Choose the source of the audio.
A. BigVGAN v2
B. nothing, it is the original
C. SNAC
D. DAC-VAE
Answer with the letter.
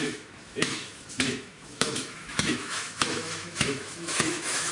D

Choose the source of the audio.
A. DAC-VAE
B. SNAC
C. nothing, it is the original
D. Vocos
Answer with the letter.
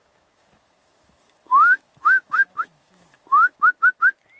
A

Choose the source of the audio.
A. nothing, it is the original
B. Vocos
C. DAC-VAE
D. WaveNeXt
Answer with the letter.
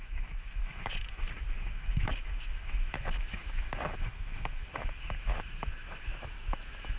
C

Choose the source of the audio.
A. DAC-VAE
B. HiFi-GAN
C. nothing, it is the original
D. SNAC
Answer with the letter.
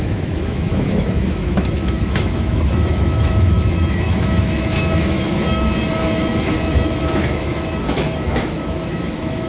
A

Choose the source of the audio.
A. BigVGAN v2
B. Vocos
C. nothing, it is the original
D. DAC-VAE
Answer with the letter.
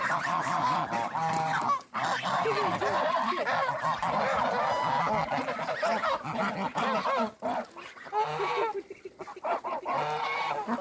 C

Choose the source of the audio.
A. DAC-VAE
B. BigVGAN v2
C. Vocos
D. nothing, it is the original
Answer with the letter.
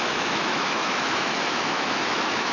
A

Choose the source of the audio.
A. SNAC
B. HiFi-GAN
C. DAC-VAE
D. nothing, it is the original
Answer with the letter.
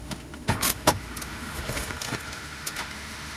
C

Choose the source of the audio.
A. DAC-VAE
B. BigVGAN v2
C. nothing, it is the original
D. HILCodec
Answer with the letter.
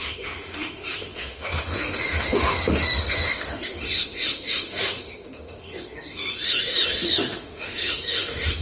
A